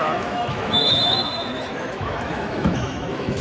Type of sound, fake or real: fake